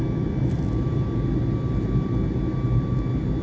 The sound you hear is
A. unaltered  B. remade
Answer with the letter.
A